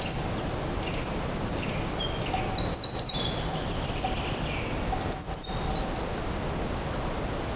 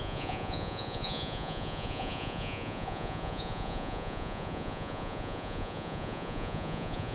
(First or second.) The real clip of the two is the first